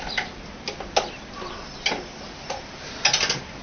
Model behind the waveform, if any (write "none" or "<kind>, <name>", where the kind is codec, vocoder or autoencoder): none